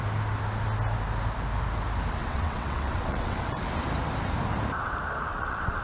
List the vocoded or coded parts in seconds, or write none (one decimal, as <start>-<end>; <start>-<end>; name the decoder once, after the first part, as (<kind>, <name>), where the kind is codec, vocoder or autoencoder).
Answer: 2.2-3.6 (vocoder, WaveNeXt); 5.3-5.8